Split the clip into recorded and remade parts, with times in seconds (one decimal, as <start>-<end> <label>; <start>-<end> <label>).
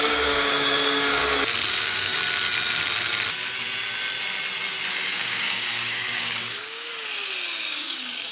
0.0-1.2 remade; 1.2-1.7 recorded; 1.7-2.2 remade; 2.2-4.9 recorded; 4.9-6.9 remade; 6.9-7.7 recorded; 7.7-8.3 remade